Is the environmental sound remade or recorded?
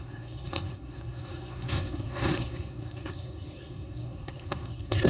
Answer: remade